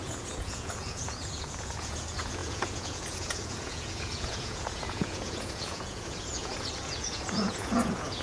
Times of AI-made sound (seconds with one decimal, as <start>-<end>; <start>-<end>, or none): 0.0-8.2